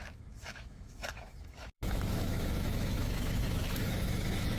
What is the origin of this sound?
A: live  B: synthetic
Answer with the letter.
B